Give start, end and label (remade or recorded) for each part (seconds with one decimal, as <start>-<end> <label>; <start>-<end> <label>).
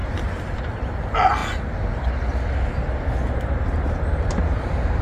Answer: 0.0-0.6 remade; 0.6-5.0 recorded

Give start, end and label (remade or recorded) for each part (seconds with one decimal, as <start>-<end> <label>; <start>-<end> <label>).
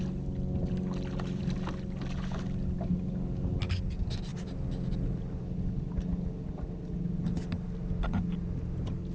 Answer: 0.0-9.1 recorded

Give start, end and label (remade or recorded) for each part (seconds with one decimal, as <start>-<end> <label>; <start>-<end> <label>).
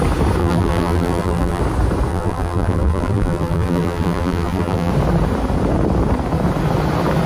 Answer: 0.0-0.4 recorded; 0.4-1.6 remade; 1.6-2.1 recorded; 2.1-4.9 remade; 4.9-7.3 recorded